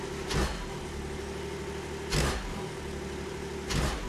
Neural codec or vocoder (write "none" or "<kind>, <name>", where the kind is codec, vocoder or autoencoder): none